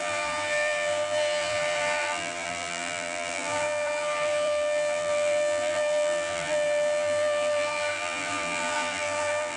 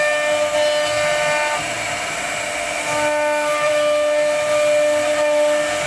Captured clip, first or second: second